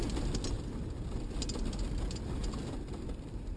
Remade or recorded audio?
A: recorded